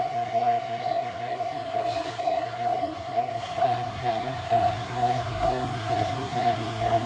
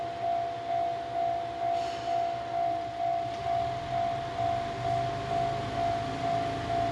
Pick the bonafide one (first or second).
second